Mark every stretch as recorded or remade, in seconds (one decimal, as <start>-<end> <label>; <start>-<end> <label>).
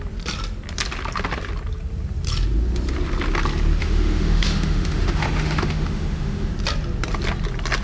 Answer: 0.0-3.8 recorded; 3.8-6.5 remade; 6.5-7.8 recorded